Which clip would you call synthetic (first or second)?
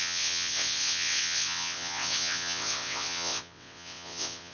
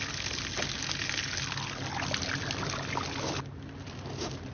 first